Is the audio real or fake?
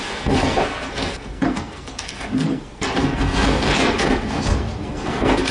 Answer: fake